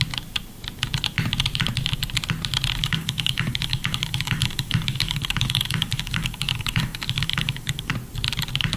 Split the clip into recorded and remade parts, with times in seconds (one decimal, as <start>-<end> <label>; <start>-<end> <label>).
0.0-2.8 recorded; 2.8-7.9 remade; 7.9-8.8 recorded